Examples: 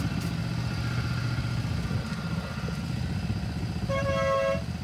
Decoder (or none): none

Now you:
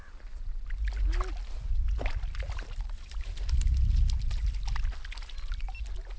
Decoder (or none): none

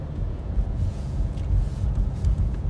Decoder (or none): vocoder, Vocos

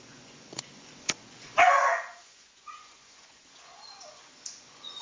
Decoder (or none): vocoder, Vocos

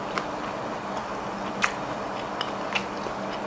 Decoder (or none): none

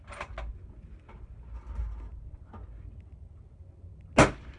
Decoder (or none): none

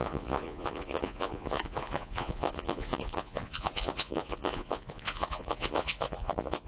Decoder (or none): vocoder, Vocos